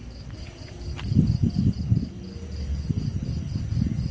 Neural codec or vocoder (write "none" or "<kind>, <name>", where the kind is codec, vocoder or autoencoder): none